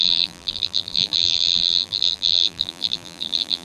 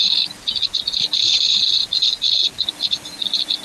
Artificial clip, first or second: first